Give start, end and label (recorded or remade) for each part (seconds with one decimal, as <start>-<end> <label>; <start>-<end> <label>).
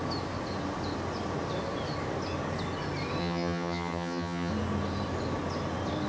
0.0-3.2 recorded; 3.2-4.5 remade; 4.5-6.1 recorded